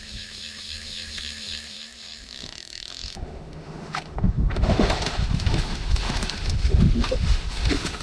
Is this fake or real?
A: fake